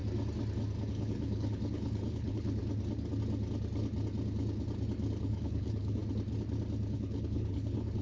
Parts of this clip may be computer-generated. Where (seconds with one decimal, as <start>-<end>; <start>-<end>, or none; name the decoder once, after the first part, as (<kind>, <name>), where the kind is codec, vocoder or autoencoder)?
0.9-2.6 (codec, HILCodec); 5.2-6.0; 6.9-8.0